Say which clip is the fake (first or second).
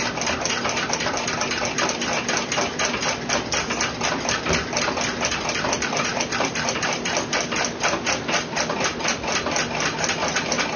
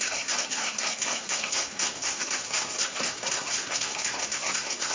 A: second